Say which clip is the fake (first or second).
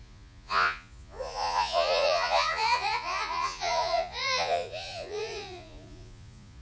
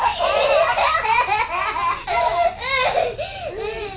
first